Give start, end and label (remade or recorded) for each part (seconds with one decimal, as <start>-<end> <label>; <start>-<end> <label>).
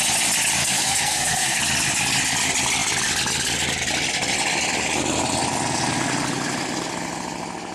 0.0-0.6 recorded; 0.6-1.6 remade; 1.6-7.7 recorded